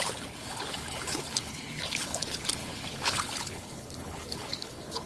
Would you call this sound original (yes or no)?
no